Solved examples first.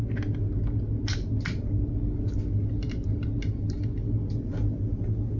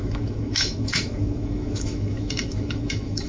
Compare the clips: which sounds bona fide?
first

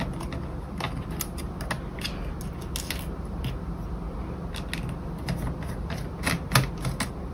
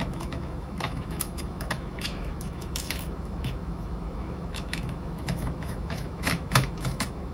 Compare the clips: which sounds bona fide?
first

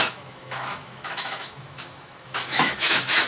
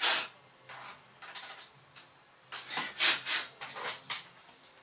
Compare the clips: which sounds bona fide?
second